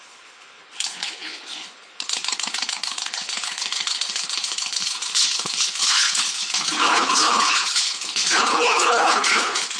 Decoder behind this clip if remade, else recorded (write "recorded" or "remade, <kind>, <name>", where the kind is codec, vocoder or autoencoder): remade, codec, HILCodec